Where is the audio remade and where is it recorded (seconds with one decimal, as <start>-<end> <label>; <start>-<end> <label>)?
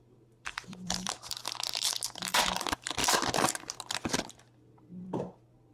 0.0-1.4 remade; 1.4-2.2 recorded; 2.2-3.0 remade; 3.0-4.3 recorded; 4.3-5.1 remade; 5.1-5.7 recorded